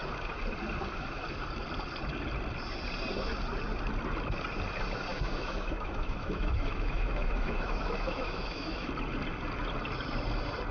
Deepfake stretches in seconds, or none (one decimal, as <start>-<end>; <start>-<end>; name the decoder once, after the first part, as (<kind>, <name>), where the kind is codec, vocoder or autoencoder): 5.1-8.9 (autoencoder, DAC-VAE)